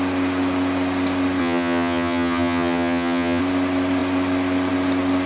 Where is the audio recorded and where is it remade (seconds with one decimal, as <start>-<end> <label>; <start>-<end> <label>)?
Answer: 0.0-1.4 recorded; 1.4-3.4 remade; 3.4-5.3 recorded